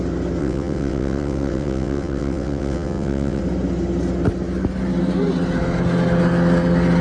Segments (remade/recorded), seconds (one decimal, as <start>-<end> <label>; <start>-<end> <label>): 0.0-0.4 recorded; 0.4-3.4 remade; 3.4-7.0 recorded